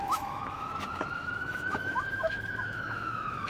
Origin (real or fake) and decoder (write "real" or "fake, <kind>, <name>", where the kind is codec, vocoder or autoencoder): fake, autoencoder, DAC-VAE